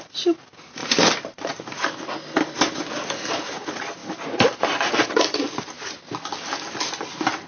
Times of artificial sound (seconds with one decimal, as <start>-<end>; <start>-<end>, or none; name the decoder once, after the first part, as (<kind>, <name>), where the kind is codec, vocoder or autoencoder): 0.8-1.6 (vocoder, BigVGAN v2); 4.0-5.5